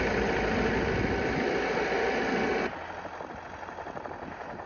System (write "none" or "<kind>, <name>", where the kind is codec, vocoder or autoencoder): none